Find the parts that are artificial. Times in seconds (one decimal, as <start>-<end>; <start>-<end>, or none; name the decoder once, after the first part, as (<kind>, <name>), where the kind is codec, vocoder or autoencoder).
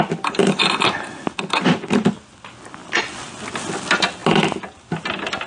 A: none